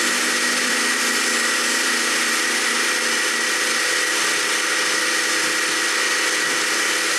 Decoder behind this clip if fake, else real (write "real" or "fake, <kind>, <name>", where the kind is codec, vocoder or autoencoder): real